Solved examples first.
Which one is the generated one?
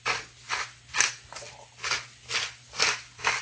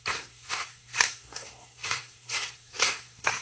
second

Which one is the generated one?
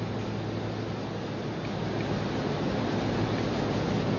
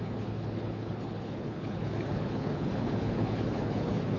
second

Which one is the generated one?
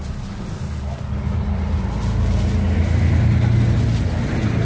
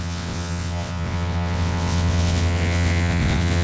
second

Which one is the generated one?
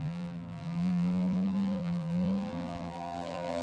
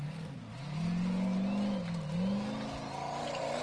first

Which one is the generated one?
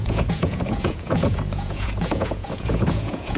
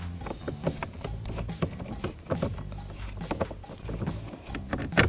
first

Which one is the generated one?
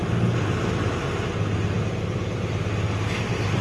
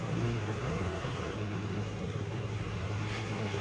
second